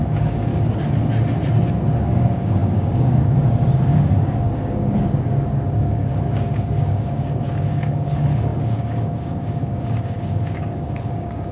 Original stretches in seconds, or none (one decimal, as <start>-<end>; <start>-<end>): 0.5-2.0